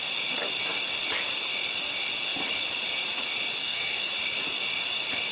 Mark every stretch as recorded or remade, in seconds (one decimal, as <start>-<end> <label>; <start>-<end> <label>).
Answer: 0.0-3.6 recorded; 3.6-4.1 remade; 4.1-5.3 recorded